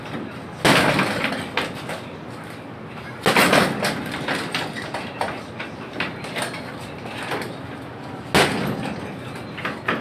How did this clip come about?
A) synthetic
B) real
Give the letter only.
B